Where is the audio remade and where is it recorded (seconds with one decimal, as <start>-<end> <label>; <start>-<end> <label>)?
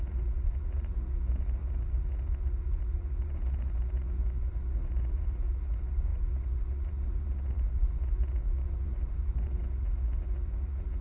0.0-11.0 remade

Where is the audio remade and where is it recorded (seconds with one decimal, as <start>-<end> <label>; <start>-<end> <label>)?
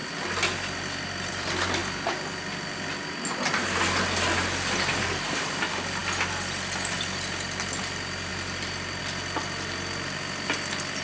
0.0-11.0 recorded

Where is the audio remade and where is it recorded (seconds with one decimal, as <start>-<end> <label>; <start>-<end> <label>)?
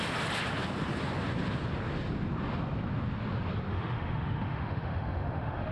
0.0-3.7 recorded; 3.7-5.7 remade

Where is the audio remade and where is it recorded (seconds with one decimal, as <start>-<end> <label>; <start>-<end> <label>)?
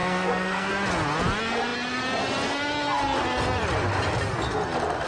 0.0-0.7 remade; 0.7-5.1 recorded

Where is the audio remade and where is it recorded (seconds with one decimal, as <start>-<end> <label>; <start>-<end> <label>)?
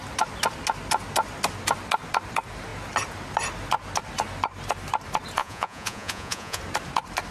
0.0-5.4 recorded; 5.4-6.6 remade; 6.6-7.3 recorded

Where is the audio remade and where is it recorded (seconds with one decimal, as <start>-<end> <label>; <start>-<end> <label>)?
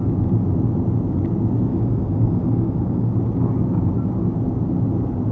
0.0-1.7 recorded; 1.7-3.1 remade; 3.1-5.3 recorded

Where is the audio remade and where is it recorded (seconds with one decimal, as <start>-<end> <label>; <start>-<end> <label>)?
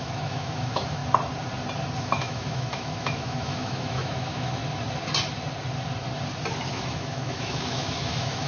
0.0-1.0 remade; 1.0-2.0 recorded; 2.0-4.6 remade; 4.6-6.7 recorded; 6.7-8.5 remade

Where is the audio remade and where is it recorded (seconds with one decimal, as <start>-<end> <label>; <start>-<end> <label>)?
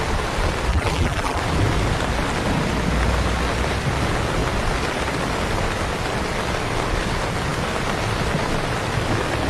0.0-0.7 recorded; 0.7-1.4 remade; 1.4-9.5 recorded